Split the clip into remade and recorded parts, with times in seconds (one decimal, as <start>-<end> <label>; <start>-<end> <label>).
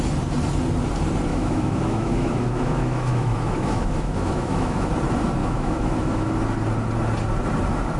0.0-1.3 recorded; 1.3-4.9 remade; 4.9-5.4 recorded; 5.4-6.3 remade; 6.3-8.0 recorded